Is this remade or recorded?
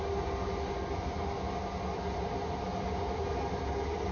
recorded